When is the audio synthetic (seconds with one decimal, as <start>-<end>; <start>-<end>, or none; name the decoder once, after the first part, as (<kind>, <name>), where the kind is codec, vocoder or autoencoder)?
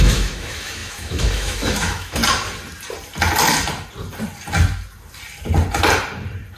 0.0-2.2 (autoencoder, DAC-VAE)